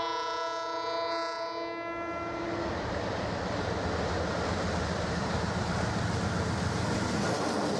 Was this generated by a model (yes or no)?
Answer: no